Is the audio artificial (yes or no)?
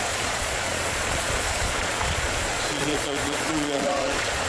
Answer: yes